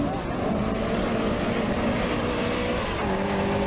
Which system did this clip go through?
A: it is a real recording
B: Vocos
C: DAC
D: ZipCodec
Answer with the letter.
A